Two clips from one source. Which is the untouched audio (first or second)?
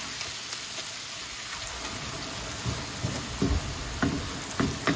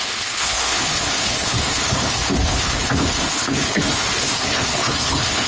first